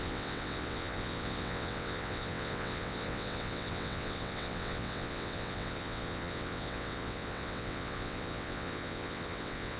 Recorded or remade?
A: remade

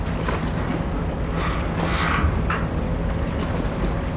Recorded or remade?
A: recorded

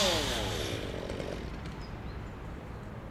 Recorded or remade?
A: recorded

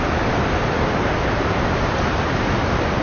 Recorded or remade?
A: recorded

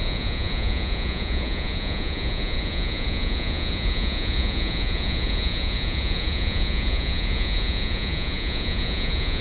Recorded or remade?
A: remade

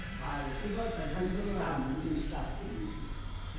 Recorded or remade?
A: recorded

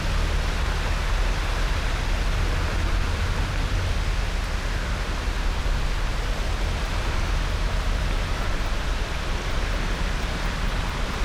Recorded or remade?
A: recorded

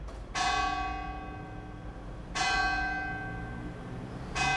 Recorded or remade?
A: recorded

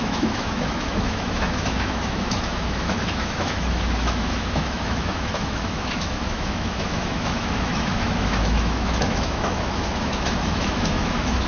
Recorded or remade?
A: remade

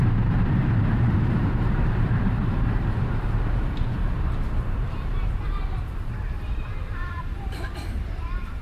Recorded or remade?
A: remade